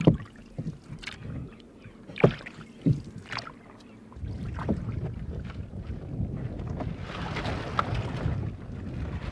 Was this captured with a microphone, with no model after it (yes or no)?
yes